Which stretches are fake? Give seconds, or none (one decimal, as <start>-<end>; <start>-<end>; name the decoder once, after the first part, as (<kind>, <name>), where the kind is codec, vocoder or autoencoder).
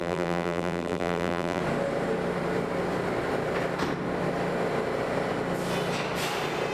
0.0-1.6 (vocoder, BigVGAN v2)